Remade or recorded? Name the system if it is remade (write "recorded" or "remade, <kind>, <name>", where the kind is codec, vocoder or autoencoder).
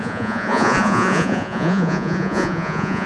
remade, vocoder, Vocos